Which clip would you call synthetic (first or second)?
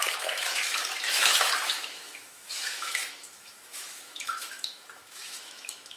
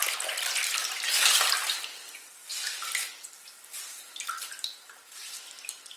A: first